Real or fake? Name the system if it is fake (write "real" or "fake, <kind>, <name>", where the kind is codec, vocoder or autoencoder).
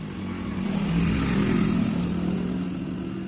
real